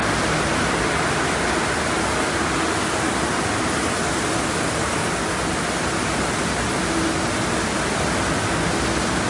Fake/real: real